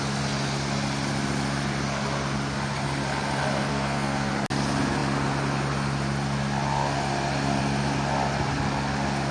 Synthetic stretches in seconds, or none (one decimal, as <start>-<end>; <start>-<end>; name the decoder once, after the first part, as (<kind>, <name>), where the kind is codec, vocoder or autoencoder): 3.7-4.3 (codec, SNAC)